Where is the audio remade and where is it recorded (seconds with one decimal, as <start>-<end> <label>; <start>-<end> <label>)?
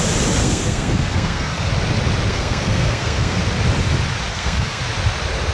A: 0.0-0.4 recorded; 0.4-1.7 remade; 1.7-2.3 recorded; 2.3-3.4 remade; 3.4-4.3 recorded; 4.3-4.8 remade; 4.8-5.5 recorded